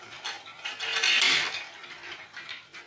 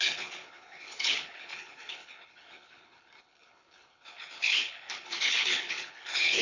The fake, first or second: second